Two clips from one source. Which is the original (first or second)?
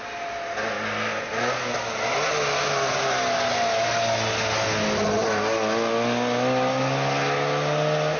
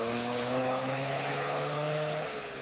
first